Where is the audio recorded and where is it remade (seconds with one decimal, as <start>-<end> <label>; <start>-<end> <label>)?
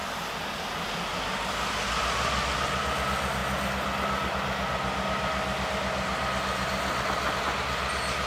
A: 0.0-8.3 recorded